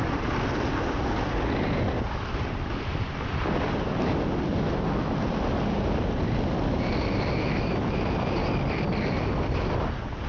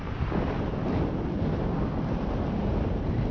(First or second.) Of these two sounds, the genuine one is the first